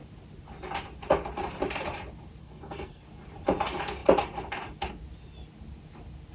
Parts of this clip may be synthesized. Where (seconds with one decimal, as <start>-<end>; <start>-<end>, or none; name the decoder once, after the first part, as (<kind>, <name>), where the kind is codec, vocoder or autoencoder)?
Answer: 2.4-3.0 (codec, SNAC)